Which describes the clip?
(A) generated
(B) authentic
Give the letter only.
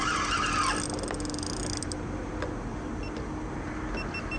B